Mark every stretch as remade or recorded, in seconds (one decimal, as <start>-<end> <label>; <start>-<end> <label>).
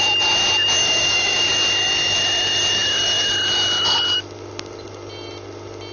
0.0-0.8 recorded; 0.8-1.5 remade; 1.5-5.9 recorded